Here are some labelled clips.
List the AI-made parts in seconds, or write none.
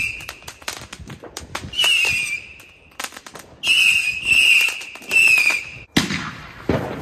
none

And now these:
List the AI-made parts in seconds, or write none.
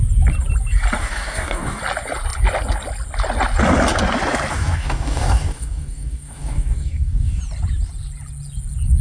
1.0-1.8 (codec, DAC); 4.5-7.4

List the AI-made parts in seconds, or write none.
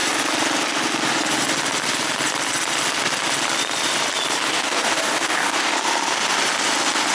4.5-5.7 (codec, DAC)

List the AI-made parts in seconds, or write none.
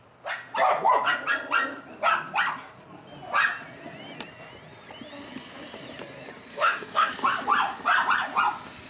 6.5-7.1 (codec, DAC)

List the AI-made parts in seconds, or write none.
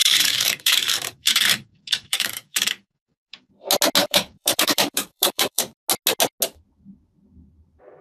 0.0-3.5 (codec, DAC); 4.0-5.6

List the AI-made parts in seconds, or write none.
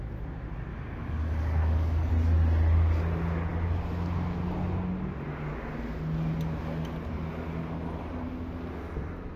0.7-2.1 (codec, DAC)